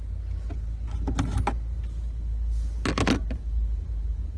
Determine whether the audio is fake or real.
real